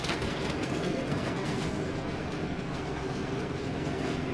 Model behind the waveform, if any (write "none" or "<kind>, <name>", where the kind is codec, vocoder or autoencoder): codec, SNAC